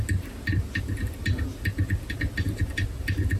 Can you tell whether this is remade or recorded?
recorded